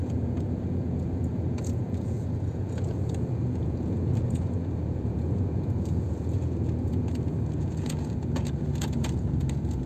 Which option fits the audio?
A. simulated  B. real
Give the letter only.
A